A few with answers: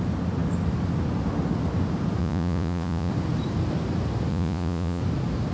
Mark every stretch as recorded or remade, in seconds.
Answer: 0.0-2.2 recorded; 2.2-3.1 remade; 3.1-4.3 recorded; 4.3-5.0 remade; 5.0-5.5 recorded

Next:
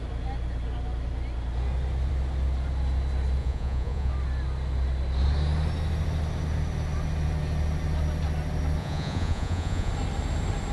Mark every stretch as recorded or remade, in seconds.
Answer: 0.0-3.4 recorded; 3.4-4.1 remade; 4.1-8.8 recorded; 8.8-9.9 remade; 9.9-10.7 recorded

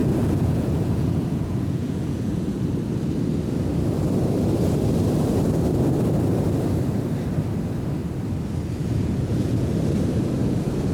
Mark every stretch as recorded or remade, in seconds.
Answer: 0.0-2.6 remade; 2.6-8.8 recorded; 8.8-9.7 remade; 9.7-10.9 recorded

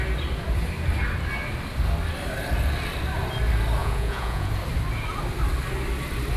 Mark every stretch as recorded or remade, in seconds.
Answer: 0.0-3.8 recorded; 3.8-4.5 remade; 4.5-6.4 recorded